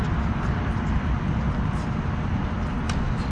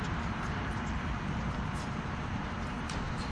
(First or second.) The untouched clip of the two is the first